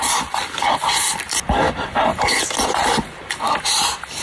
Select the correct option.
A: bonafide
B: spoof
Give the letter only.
A